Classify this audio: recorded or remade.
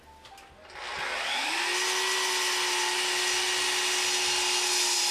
recorded